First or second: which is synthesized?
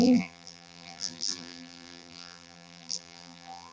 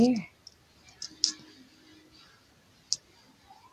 first